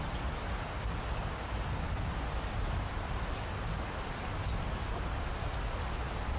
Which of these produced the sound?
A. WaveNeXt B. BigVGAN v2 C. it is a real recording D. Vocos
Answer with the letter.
C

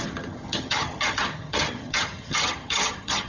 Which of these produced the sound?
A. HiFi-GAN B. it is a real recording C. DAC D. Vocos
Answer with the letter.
A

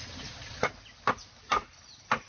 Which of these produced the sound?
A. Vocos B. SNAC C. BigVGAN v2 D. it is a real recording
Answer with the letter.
D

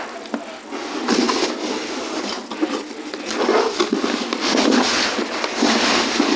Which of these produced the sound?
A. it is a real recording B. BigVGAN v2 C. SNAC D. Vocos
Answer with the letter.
A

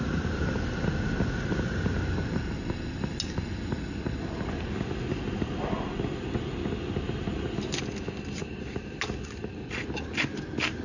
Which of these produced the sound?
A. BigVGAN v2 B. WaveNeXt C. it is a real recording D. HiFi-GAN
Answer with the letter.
C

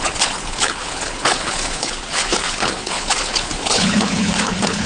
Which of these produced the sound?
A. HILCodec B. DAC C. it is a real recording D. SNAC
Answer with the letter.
A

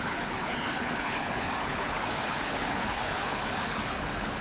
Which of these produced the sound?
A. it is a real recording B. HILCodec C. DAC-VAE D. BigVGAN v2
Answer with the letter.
B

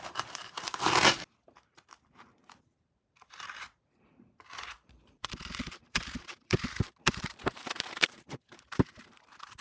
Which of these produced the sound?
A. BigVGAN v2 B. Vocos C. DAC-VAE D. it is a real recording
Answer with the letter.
A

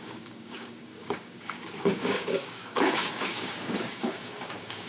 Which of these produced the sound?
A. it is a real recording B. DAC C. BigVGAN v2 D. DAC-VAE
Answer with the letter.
B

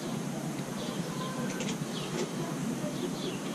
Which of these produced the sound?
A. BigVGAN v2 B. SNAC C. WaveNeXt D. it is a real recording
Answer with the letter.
A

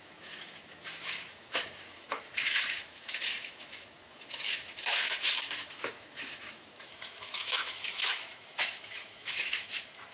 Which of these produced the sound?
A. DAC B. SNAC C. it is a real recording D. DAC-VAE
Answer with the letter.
D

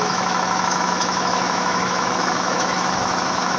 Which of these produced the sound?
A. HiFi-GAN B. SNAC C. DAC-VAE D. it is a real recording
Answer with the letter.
C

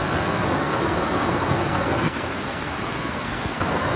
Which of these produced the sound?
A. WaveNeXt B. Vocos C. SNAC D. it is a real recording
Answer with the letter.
C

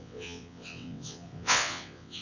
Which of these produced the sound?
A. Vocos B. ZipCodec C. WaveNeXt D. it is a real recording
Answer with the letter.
C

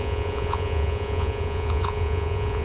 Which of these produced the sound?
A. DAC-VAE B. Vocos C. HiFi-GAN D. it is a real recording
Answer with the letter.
B